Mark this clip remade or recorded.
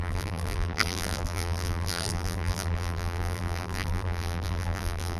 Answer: remade